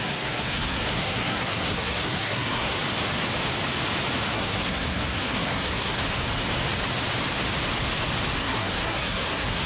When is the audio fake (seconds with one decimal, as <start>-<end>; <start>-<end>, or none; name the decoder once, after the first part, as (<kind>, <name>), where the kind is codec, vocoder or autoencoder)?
0.0-2.8 (codec, SNAC); 4.3-6.0; 8.4-9.7